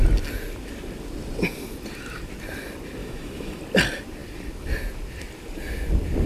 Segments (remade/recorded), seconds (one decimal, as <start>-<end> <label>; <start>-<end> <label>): 0.0-3.0 recorded; 3.0-3.6 remade; 3.6-6.3 recorded